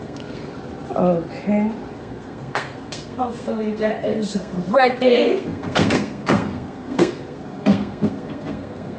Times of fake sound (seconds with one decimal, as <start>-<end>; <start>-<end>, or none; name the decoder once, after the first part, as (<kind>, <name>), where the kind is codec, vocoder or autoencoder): 0.0-0.5 (codec, SNAC); 1.9-9.0